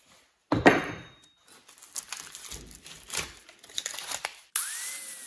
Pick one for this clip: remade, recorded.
recorded